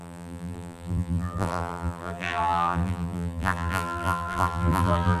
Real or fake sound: fake